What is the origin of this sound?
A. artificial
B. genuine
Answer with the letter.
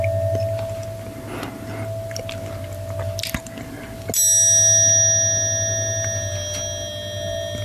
B